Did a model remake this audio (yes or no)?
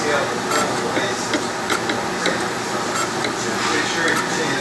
no